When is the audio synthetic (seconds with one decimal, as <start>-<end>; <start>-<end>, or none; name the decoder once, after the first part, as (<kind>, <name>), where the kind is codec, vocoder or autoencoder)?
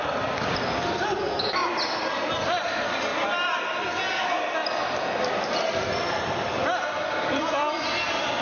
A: none